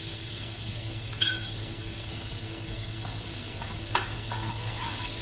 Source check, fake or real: fake